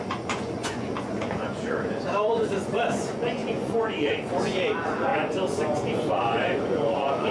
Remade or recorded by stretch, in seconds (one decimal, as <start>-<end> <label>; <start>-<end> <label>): 0.0-7.3 remade